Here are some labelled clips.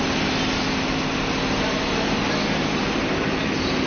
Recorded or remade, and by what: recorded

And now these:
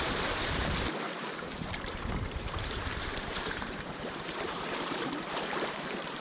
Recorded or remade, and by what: remade, vocoder, BigVGAN v2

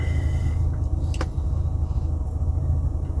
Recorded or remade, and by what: recorded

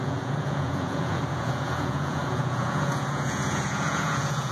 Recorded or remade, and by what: remade, vocoder, Vocos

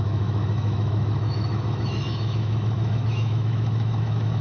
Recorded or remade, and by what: remade, autoencoder, DAC-VAE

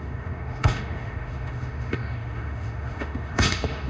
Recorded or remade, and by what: remade, autoencoder, DAC-VAE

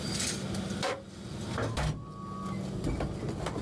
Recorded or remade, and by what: recorded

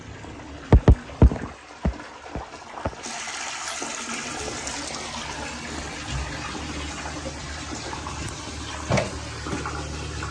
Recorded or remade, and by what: recorded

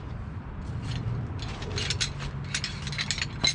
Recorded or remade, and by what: recorded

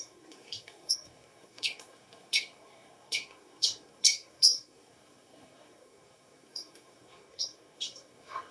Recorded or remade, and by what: remade, codec, SNAC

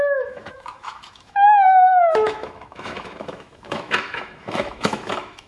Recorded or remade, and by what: remade, autoencoder, DAC-VAE